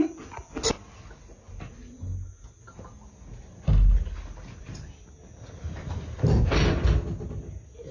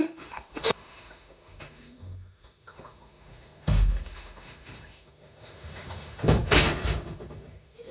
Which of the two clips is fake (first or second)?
second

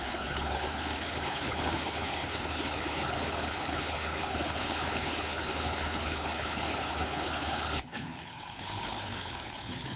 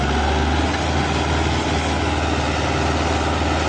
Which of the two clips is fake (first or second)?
first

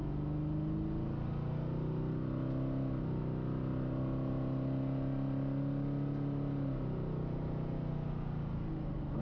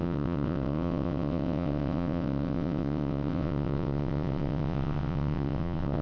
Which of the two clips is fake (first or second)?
second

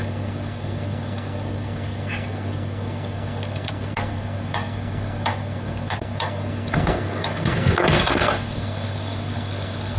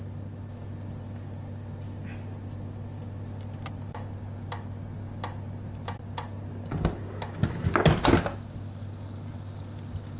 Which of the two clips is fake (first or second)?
first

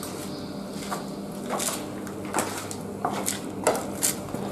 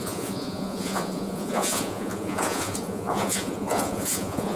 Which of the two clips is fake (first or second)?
second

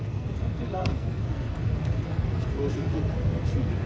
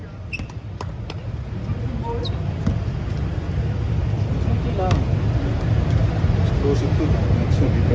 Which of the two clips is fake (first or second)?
first